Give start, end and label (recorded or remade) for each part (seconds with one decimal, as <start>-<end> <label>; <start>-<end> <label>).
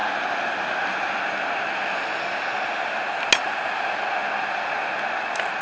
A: 0.0-5.6 recorded